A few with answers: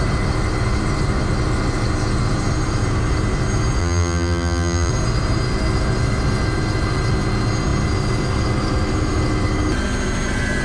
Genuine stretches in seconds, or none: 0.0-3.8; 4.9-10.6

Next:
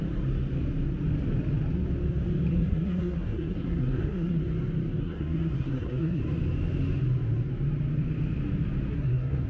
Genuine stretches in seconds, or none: 0.0-2.5; 4.4-5.0; 6.2-8.9

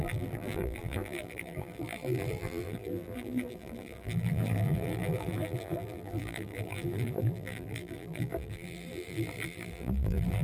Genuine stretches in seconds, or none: none

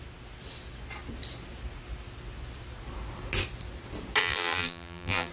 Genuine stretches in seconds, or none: 0.0-4.2

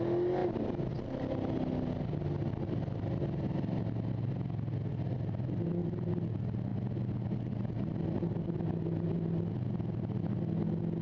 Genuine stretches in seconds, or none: 0.0-11.0

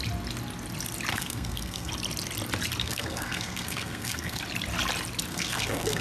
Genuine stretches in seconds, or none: 0.0-1.1; 1.9-2.8; 4.4-5.3